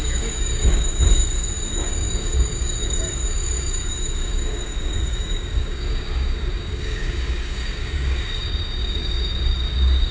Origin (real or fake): fake